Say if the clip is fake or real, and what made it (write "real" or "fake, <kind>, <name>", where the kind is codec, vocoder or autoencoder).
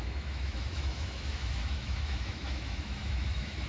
fake, autoencoder, DAC-VAE